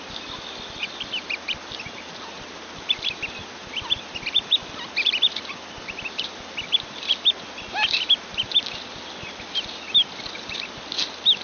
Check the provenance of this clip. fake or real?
real